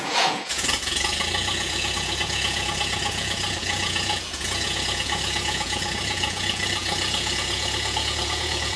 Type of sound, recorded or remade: remade